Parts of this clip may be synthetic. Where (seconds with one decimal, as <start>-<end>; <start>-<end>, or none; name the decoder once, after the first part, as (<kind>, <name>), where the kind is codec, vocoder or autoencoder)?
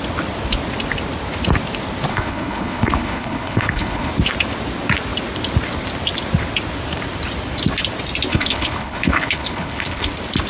2.1-4.1 (codec, HILCodec); 8.3-10.1